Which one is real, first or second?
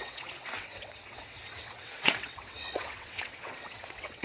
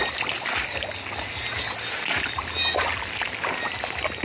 second